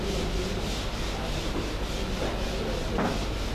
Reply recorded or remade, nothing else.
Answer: recorded